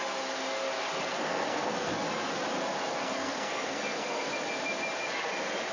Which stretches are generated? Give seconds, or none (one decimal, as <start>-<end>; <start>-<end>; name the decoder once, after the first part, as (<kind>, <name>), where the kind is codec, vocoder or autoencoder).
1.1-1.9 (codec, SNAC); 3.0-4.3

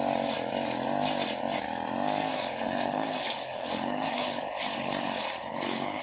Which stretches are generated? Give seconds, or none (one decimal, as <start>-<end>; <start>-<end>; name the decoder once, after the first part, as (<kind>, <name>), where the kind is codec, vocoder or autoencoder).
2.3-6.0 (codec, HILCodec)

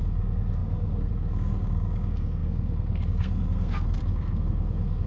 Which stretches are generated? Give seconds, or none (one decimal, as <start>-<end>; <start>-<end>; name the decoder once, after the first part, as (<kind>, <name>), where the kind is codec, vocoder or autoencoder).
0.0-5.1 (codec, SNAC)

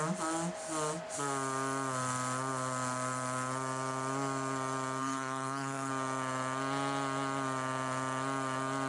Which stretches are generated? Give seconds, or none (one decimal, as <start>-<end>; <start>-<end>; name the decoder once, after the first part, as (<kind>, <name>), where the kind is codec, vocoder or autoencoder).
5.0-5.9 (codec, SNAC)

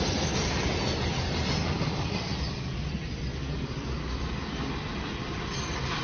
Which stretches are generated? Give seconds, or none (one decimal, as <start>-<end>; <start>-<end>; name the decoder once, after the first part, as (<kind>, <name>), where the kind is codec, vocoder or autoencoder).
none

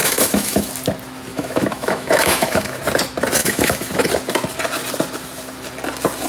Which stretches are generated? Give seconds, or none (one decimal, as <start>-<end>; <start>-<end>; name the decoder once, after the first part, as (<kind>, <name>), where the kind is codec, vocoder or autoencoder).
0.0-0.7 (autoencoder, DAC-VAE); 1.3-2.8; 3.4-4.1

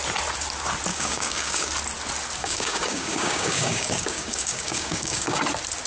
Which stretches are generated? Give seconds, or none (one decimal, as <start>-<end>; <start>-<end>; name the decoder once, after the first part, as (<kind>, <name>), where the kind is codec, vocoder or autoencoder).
0.9-1.7 (codec, DAC); 2.4-5.4